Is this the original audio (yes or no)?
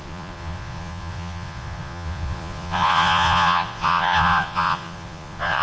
no